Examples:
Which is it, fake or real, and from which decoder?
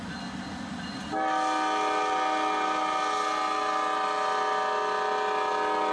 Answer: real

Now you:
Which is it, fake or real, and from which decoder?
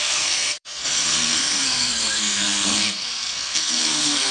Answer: fake, codec, SNAC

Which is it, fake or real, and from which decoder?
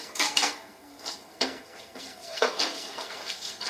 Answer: fake, codec, SNAC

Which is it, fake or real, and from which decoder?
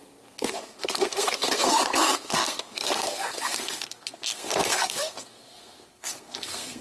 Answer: fake, codec, SNAC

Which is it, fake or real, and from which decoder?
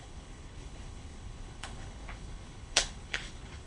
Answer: fake, codec, HILCodec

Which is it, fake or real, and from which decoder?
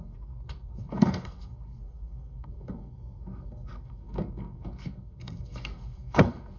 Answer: fake, codec, SNAC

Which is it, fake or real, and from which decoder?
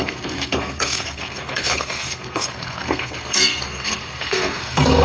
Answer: fake, codec, SNAC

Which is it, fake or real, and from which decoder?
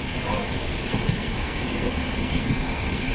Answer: fake, codec, SNAC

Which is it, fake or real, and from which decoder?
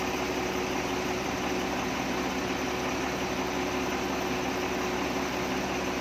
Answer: real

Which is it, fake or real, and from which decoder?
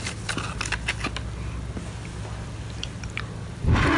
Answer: real